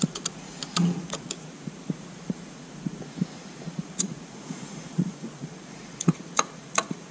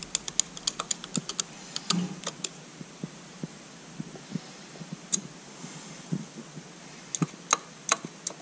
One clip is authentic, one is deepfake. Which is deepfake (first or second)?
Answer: first